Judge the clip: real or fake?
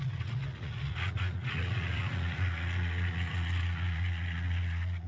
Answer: fake